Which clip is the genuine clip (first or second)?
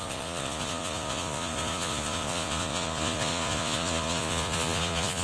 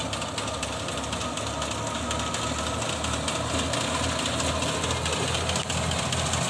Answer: second